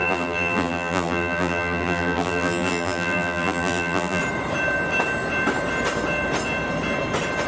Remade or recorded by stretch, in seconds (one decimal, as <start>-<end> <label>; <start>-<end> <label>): 0.0-4.2 remade; 4.2-7.5 recorded

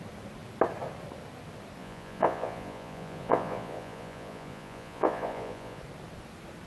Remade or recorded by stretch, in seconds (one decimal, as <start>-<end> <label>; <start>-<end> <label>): 0.0-1.8 recorded; 1.8-5.8 remade; 5.8-6.7 recorded